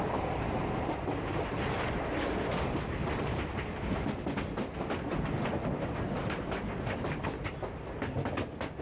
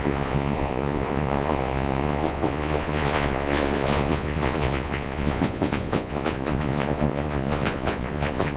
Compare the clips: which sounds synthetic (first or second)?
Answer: second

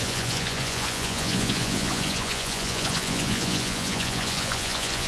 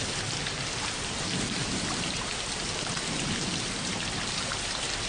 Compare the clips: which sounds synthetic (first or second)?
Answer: first